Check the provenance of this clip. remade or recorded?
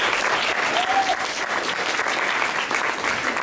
recorded